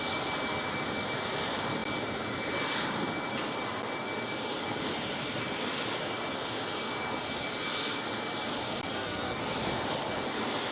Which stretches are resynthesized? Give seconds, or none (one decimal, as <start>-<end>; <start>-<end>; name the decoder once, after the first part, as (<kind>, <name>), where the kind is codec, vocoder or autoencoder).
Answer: 8.9-9.4 (codec, SNAC)